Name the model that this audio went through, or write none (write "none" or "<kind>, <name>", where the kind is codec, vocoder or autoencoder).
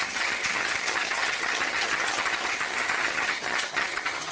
vocoder, HiFi-GAN